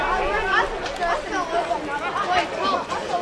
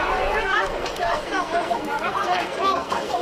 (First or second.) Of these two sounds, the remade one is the second